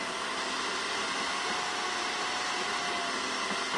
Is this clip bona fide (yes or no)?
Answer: yes